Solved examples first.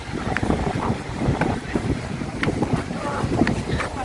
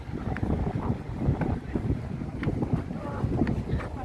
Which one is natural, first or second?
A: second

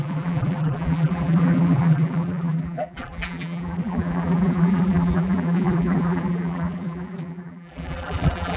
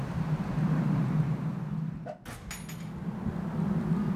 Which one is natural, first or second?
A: second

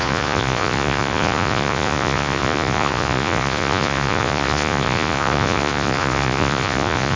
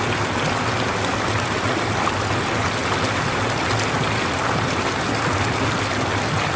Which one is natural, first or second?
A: second